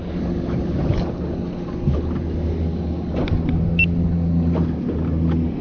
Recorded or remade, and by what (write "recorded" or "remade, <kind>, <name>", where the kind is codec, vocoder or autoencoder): recorded